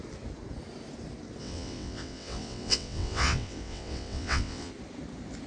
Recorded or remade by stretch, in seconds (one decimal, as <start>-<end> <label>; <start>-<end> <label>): 0.0-1.4 recorded; 1.4-4.7 remade; 4.7-5.5 recorded